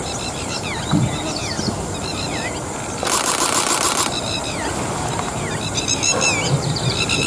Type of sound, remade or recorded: recorded